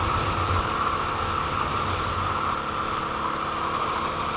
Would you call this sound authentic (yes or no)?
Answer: yes